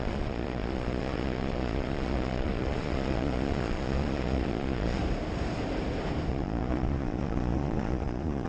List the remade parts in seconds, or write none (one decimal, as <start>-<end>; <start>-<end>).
0.0-5.0; 6.3-8.5